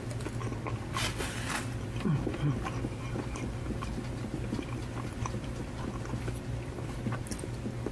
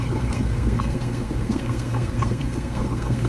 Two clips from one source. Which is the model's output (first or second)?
second